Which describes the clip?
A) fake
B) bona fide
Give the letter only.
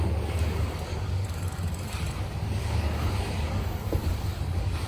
A